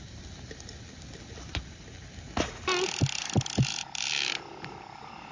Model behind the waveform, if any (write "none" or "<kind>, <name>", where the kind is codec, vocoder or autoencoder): none